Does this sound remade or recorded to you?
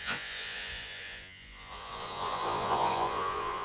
remade